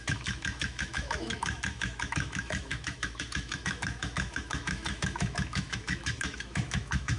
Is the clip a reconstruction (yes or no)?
yes